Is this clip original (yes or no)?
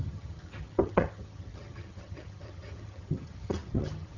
no